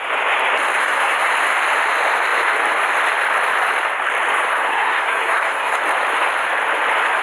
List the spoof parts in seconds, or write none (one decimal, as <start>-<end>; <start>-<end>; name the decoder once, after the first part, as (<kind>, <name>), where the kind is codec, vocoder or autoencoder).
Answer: 0.8-1.3 (codec, SNAC); 4.5-5.8